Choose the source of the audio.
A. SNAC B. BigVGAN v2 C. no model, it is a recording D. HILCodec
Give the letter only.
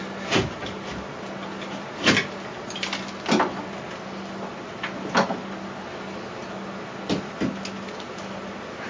C